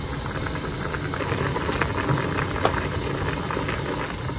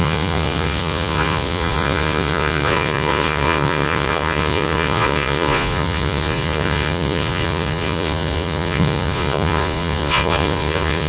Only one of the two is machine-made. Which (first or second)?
second